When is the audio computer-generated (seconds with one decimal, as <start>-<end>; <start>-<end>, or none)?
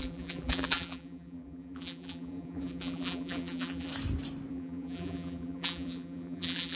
0.0-3.9; 4.5-6.8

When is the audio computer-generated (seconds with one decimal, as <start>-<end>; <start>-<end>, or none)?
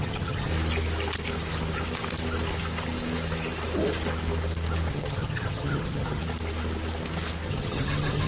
0.0-0.5; 4.9-6.2; 7.5-8.3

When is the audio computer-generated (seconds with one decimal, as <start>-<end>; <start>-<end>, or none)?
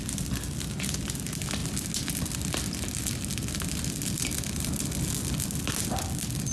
none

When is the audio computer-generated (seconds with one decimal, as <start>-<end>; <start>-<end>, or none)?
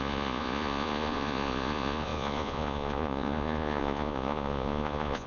0.0-5.3